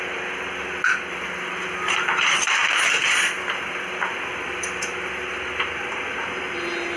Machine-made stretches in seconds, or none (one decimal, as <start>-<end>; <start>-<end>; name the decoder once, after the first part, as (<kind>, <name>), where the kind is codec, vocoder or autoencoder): none